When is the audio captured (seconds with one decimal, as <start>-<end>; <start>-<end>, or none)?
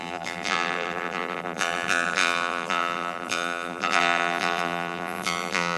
none